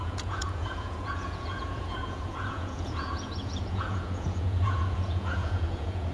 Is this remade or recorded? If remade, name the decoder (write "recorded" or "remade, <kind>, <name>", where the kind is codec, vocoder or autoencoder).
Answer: remade, vocoder, Vocos